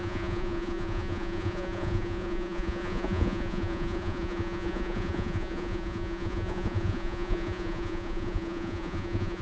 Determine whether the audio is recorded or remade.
remade